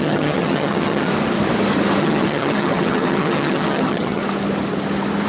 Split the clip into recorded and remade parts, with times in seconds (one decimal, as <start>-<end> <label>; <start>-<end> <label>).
0.0-1.1 remade; 1.1-2.0 recorded; 2.0-4.2 remade; 4.2-5.3 recorded